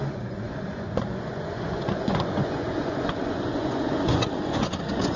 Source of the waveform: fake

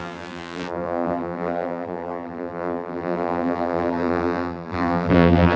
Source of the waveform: fake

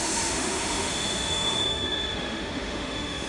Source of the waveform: fake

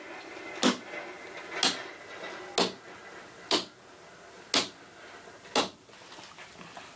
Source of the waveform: real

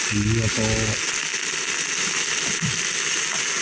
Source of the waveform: real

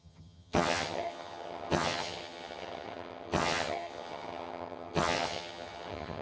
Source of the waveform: fake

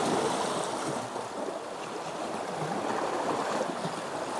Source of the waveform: real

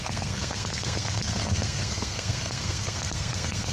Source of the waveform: fake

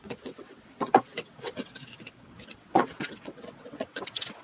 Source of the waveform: fake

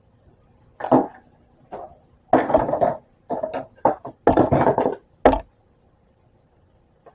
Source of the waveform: real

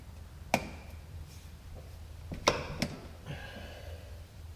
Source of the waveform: real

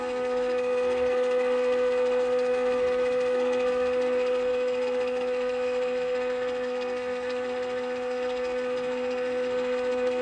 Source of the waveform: fake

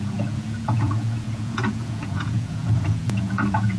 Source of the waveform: fake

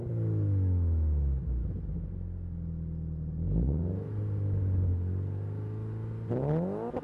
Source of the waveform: real